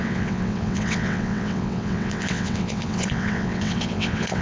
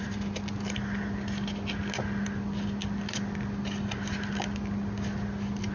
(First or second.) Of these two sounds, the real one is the second